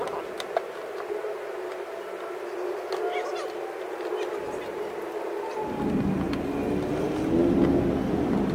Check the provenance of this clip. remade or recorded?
recorded